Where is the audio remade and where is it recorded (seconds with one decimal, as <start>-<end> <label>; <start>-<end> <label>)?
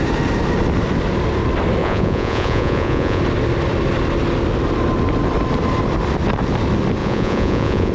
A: 0.0-1.8 recorded; 1.8-3.2 remade; 3.2-7.0 recorded; 7.0-7.9 remade